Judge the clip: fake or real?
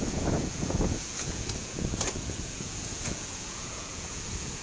fake